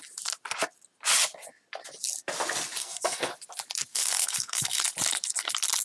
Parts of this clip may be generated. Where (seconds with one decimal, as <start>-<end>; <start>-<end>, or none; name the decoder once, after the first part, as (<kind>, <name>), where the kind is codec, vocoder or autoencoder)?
2.8-3.3 (codec, SNAC); 3.9-4.8